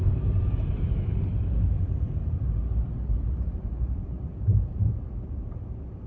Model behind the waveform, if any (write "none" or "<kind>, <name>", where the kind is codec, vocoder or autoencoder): vocoder, BigVGAN v2